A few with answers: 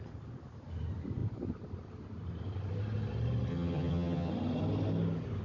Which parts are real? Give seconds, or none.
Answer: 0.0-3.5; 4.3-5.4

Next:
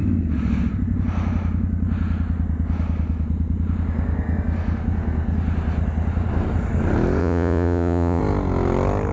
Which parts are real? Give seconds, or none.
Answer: 0.0-7.2; 8.2-9.1

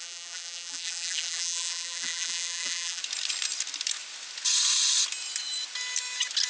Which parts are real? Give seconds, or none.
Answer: 3.0-6.5